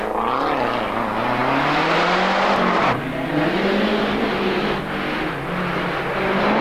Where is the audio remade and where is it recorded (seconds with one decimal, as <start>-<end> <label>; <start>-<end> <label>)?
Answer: 0.0-6.6 recorded